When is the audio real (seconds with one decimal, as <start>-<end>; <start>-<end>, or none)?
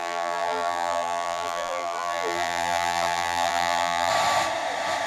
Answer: 4.1-5.1